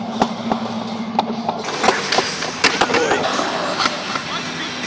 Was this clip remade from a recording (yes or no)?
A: no